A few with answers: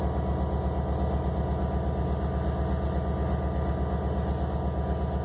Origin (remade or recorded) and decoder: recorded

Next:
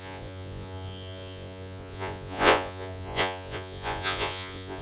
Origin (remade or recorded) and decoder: remade, vocoder, Vocos